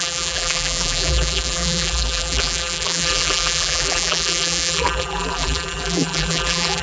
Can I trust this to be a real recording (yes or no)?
no